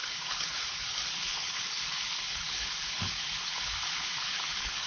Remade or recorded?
remade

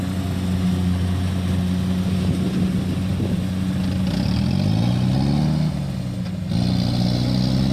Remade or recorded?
recorded